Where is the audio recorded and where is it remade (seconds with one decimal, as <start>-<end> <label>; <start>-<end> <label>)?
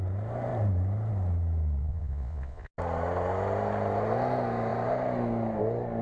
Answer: 0.0-1.8 recorded; 1.8-2.7 remade; 2.7-6.0 recorded